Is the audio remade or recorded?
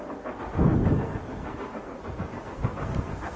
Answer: remade